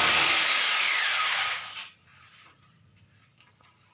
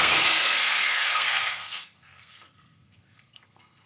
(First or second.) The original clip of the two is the first